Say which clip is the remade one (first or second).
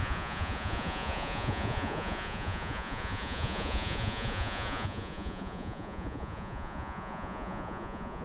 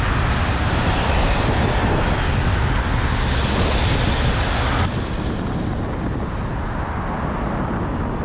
first